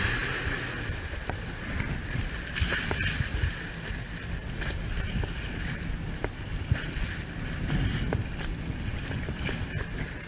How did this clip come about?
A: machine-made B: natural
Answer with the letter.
B